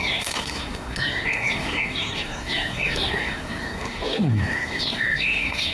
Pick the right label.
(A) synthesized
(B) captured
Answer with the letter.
A